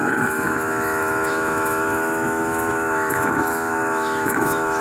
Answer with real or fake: fake